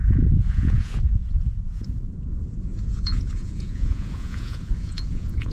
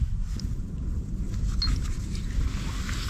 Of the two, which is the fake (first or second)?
first